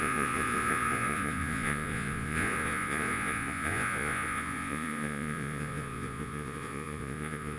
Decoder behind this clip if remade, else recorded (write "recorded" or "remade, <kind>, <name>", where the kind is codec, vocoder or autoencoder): remade, vocoder, Vocos